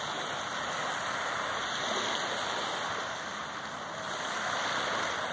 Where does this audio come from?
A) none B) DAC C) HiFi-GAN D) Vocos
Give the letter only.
A